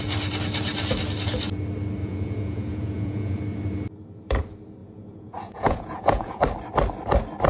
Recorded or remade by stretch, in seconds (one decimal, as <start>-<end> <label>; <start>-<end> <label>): 0.0-2.0 recorded; 2.0-3.4 remade; 3.4-4.8 recorded; 4.8-6.4 remade; 6.4-7.5 recorded